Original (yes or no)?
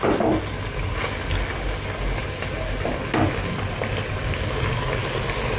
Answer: yes